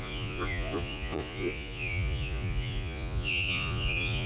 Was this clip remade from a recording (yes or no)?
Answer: yes